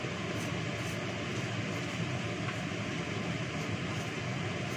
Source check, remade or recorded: recorded